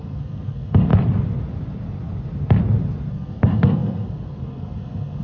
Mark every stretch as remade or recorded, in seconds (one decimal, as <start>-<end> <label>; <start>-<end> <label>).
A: 0.0-0.9 remade; 0.9-3.1 recorded; 3.1-5.2 remade